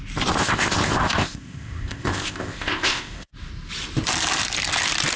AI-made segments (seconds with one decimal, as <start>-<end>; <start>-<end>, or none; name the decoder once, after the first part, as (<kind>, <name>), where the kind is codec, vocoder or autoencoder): 0.4-3.3 (codec, ZipCodec)